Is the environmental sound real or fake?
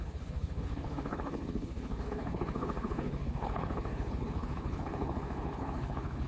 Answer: fake